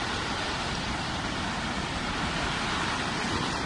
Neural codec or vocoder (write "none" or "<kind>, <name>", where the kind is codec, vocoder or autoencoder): vocoder, BigVGAN v2